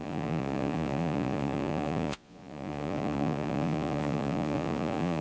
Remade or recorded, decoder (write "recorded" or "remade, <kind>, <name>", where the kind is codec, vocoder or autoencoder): remade, vocoder, Vocos